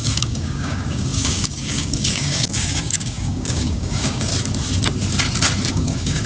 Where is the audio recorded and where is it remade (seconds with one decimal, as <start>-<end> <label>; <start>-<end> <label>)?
0.0-4.3 remade; 4.3-5.7 recorded; 5.7-6.3 remade

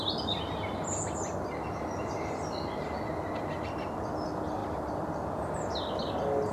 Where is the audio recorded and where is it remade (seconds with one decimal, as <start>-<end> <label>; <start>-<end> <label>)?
0.0-6.5 recorded

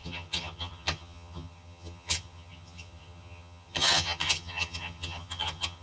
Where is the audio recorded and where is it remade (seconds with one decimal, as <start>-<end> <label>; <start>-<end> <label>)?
0.0-5.8 remade

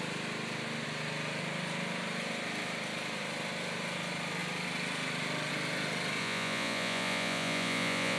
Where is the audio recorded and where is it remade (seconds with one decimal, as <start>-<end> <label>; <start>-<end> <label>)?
0.0-6.2 recorded; 6.2-8.2 remade

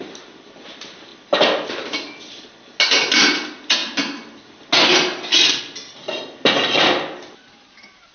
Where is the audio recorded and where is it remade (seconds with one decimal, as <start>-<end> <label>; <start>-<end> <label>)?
0.0-8.1 recorded

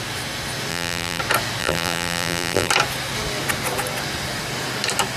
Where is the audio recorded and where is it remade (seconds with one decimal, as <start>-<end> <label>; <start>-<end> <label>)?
0.0-0.7 recorded; 0.7-1.2 remade; 1.2-1.6 recorded; 1.6-2.7 remade; 2.7-5.2 recorded